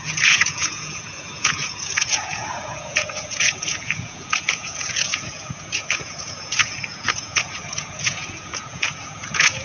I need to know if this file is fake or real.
fake